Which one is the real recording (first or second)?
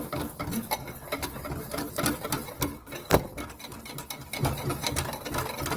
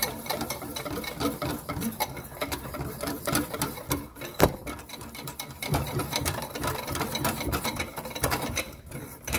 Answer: first